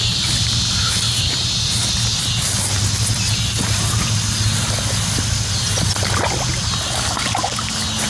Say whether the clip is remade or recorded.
recorded